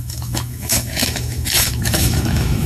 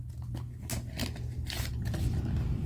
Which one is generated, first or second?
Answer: first